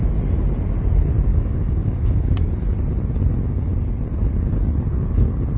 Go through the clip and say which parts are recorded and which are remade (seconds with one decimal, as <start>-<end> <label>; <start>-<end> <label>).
0.0-1.3 recorded; 1.3-2.5 remade; 2.5-5.6 recorded